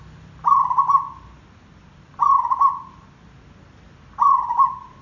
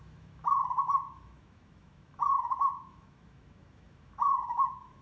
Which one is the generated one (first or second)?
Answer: second